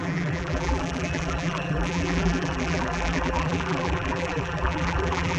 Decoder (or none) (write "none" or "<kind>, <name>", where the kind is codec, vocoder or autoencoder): vocoder, BigVGAN v2